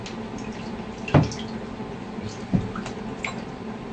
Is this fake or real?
real